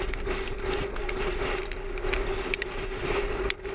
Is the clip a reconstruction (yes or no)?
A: no